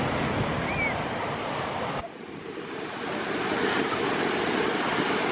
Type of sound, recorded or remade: recorded